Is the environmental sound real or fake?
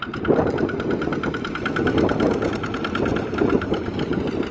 real